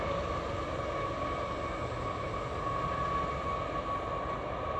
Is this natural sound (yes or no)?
yes